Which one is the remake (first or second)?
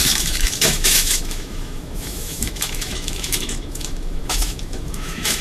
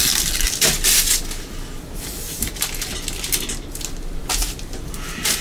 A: first